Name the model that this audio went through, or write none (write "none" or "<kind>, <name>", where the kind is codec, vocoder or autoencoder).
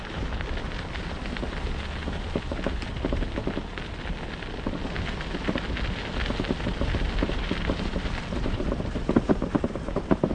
none